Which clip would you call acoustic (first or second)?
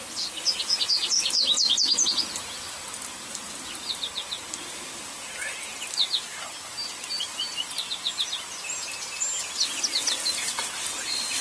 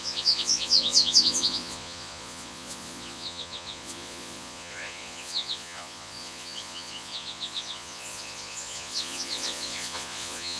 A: first